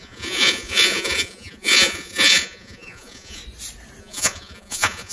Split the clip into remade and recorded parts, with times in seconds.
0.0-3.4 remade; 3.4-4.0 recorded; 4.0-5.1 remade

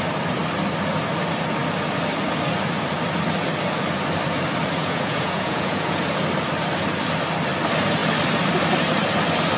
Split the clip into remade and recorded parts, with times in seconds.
0.0-4.8 recorded; 4.8-6.0 remade; 6.0-9.6 recorded

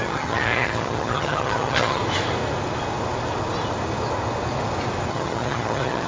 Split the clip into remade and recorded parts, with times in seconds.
0.0-2.0 remade; 2.0-5.1 recorded; 5.1-6.1 remade

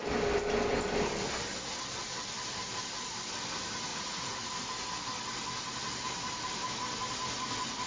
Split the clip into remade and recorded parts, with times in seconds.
0.0-3.9 recorded; 3.9-4.5 remade; 4.5-7.9 recorded

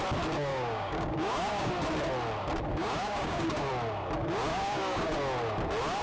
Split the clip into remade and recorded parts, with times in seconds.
0.0-0.5 recorded; 0.5-1.7 remade; 1.7-2.7 recorded; 2.7-3.7 remade; 3.7-4.5 recorded; 4.5-5.1 remade; 5.1-6.0 recorded

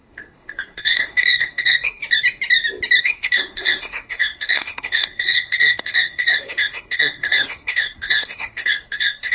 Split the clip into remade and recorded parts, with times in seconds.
0.0-2.0 remade; 2.0-3.0 recorded; 3.0-9.3 remade

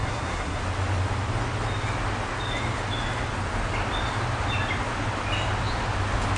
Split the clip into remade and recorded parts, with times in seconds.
0.0-0.6 remade; 0.6-6.4 recorded

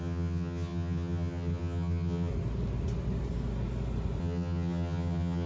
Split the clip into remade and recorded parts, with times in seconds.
0.0-2.3 remade; 2.3-4.2 recorded; 4.2-5.5 remade